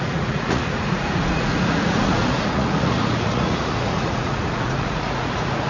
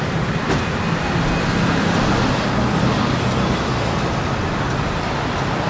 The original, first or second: second